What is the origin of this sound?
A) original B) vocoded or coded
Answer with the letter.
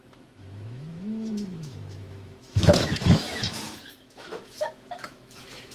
B